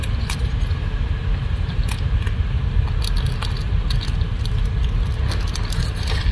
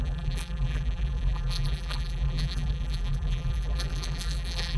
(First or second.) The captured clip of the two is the first